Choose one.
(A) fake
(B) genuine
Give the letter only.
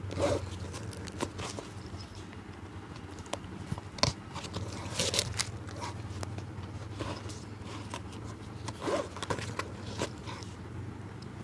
B